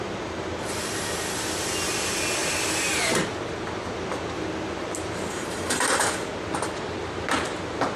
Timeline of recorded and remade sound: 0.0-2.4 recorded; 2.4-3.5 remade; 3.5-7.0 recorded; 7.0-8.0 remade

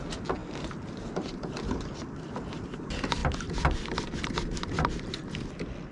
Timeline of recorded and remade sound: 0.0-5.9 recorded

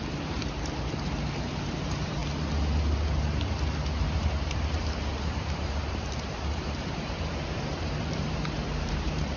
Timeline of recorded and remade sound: 0.0-2.2 remade; 2.2-4.0 recorded; 4.0-9.4 remade

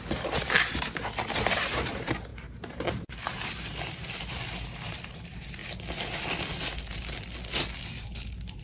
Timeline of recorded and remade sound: 0.0-5.6 remade; 5.6-7.9 recorded; 7.9-8.6 remade

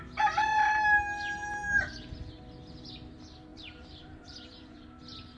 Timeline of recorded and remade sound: 0.0-1.6 recorded; 1.6-2.4 remade; 2.4-3.5 recorded; 3.5-5.0 remade; 5.0-5.4 recorded

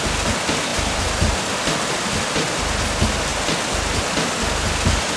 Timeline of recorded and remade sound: 0.0-0.7 recorded; 0.7-2.6 remade; 2.6-5.2 recorded

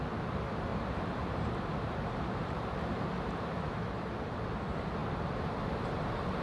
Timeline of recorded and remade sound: 0.0-0.7 recorded; 0.7-3.5 remade; 3.5-6.4 recorded